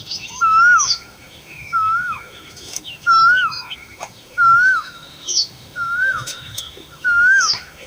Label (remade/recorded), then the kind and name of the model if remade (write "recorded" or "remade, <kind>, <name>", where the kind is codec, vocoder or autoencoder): remade, autoencoder, DAC-VAE